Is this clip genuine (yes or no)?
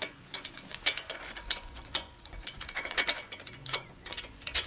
no